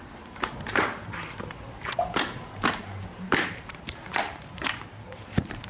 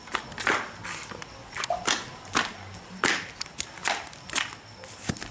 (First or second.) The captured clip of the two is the second